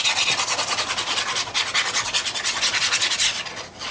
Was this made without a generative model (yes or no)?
yes